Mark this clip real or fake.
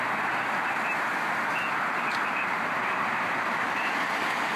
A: real